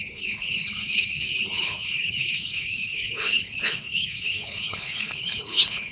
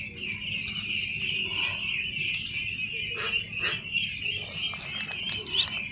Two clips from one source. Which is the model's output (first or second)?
first